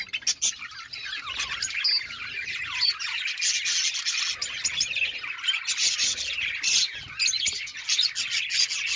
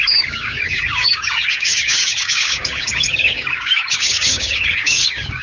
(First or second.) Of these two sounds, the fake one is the second